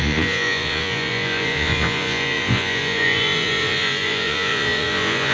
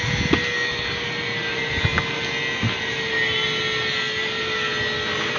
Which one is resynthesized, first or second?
first